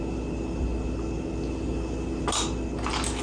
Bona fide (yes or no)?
yes